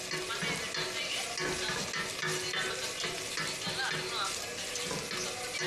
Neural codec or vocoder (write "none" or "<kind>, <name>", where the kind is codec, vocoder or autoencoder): none